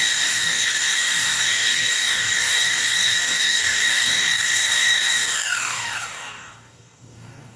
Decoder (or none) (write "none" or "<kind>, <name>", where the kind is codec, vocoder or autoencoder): codec, DAC